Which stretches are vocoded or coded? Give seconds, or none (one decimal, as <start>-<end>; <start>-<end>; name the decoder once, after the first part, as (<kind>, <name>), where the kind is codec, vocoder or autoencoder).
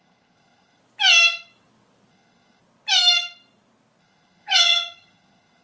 0.0-0.8 (vocoder, HiFi-GAN); 2.1-2.6; 4.0-5.6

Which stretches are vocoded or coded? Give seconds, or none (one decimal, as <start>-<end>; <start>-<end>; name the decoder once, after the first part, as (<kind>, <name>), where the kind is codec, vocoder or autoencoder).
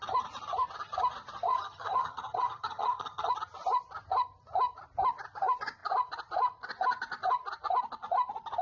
1.5-3.3 (vocoder, HiFi-GAN)